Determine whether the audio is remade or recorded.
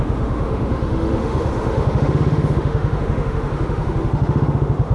remade